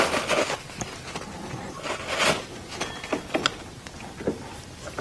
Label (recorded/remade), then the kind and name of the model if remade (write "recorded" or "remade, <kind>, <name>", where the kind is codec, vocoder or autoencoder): recorded